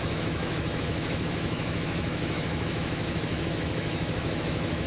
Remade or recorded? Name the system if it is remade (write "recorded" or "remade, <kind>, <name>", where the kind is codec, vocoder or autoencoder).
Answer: remade, autoencoder, DAC-VAE